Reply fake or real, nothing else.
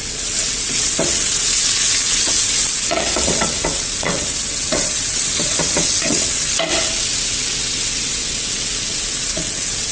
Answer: fake